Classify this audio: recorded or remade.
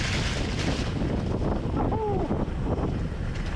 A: recorded